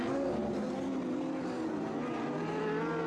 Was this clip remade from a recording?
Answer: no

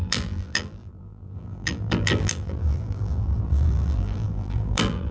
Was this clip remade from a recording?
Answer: yes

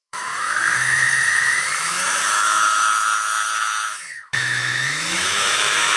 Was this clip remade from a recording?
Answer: yes